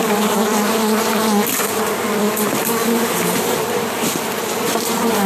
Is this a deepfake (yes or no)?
no